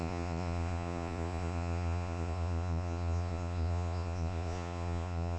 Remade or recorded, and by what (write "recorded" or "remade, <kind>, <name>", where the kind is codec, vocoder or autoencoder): remade, vocoder, Vocos